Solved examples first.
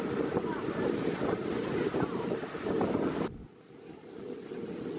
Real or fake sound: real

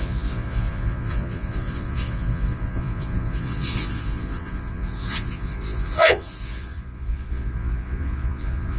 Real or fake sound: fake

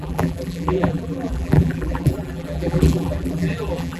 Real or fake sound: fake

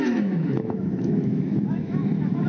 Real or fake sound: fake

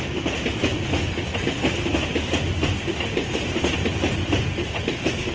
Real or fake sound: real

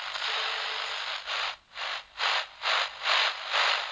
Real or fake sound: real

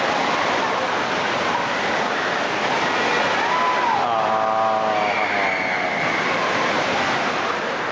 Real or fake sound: real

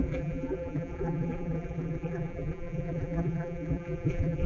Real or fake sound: fake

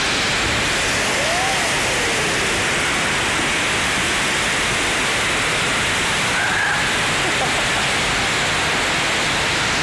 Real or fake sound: real